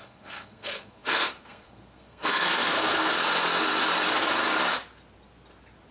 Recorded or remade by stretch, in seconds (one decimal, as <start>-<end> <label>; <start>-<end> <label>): 0.0-3.1 remade; 3.1-5.9 recorded